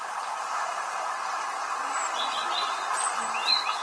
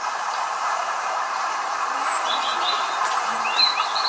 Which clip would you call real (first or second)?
first